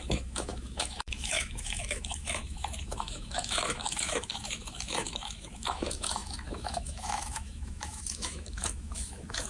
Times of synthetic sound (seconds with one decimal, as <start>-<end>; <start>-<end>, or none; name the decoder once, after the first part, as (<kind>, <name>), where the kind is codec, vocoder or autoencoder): 0.0-9.5 (autoencoder, DAC-VAE)